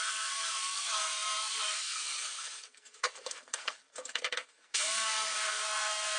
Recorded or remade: remade